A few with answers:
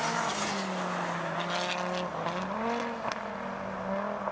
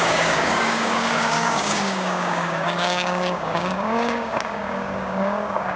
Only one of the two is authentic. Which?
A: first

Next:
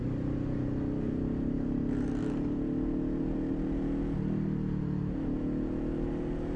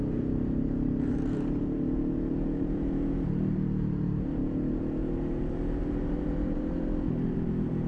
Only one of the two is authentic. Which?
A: first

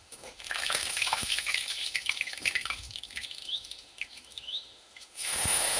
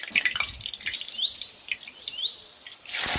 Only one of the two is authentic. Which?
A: second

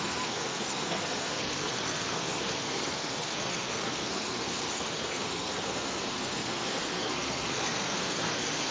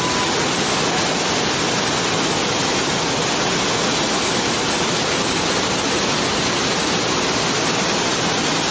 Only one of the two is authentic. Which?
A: second